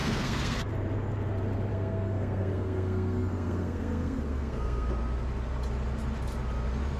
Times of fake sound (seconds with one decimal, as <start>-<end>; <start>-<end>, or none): 0.0-0.7; 1.7-4.9